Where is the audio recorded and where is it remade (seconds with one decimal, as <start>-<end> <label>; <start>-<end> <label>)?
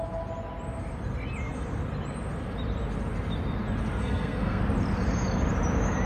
0.0-4.0 recorded; 4.0-4.6 remade; 4.6-6.1 recorded